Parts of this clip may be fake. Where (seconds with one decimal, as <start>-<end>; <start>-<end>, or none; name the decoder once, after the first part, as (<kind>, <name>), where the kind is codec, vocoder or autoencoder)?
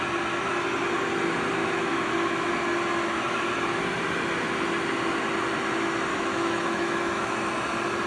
1.6-2.5 (autoencoder, DAC-VAE); 6.1-7.5